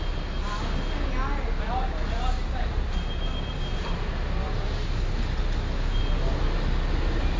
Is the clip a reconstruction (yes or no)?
no